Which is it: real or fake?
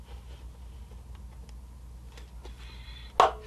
real